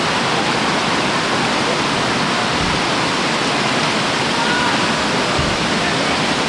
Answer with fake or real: real